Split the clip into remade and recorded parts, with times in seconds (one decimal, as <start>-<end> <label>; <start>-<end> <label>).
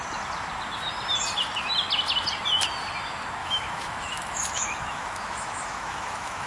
0.0-3.4 recorded; 3.4-6.5 remade